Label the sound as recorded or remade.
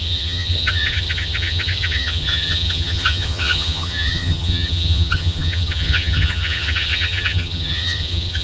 remade